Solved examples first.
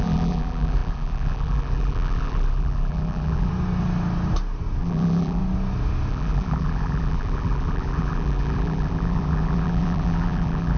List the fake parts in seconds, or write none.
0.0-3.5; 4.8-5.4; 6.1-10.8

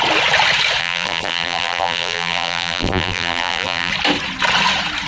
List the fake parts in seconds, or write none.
0.8-3.9

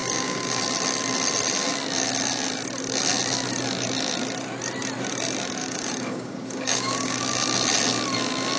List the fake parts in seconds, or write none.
0.0-0.6; 5.6-7.2

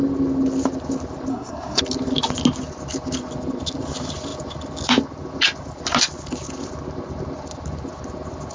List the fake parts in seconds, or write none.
1.3-1.8

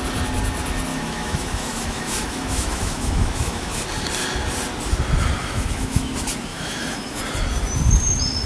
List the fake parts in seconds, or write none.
0.9-3.8; 5.4-6.1; 6.5-7.2